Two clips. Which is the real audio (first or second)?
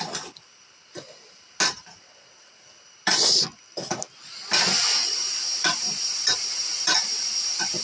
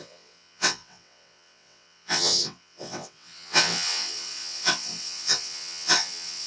first